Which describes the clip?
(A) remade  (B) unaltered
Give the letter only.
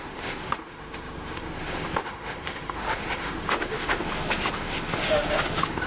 A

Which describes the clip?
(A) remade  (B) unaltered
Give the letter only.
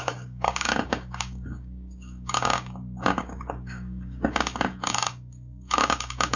A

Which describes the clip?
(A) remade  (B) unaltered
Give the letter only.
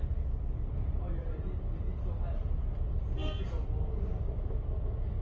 B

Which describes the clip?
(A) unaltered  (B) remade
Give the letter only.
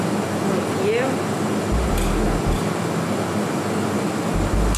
A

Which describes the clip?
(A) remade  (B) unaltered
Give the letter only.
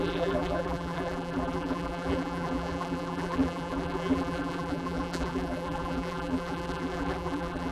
A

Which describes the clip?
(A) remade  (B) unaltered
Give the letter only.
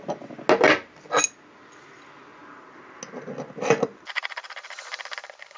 B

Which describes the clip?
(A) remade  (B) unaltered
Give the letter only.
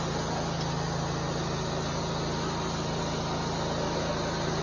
B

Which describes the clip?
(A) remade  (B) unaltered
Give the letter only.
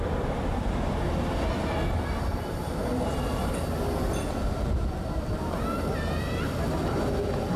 B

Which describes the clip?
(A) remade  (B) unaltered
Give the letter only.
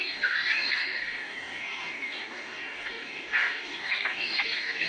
A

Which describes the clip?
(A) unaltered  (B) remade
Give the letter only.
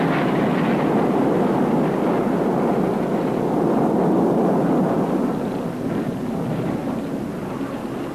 A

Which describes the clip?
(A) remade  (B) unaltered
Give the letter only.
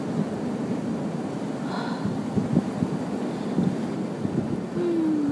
B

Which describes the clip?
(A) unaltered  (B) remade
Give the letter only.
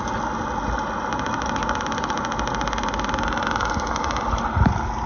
A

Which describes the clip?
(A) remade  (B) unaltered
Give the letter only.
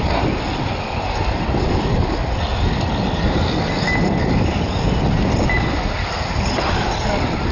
B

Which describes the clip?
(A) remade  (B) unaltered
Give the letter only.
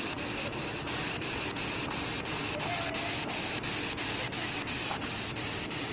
B